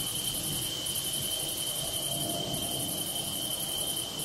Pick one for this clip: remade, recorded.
recorded